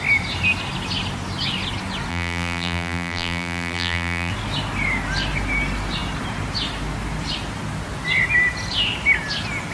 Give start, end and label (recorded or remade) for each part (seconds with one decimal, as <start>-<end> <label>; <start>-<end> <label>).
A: 0.0-2.1 recorded; 2.1-4.3 remade; 4.3-9.7 recorded